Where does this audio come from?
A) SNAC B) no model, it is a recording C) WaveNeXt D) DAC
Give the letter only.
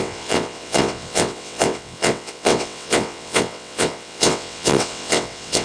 C